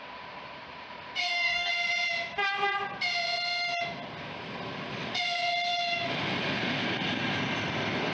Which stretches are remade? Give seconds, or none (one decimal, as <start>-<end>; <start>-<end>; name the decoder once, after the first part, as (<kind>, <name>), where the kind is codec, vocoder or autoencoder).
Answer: 1.2-1.7 (codec, DAC)